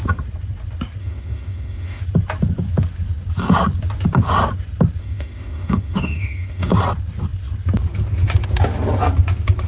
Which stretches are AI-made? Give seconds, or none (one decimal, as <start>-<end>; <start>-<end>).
1.0-2.0; 5.0-6.7